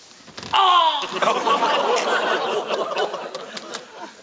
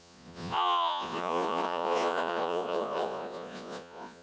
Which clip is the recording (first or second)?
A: first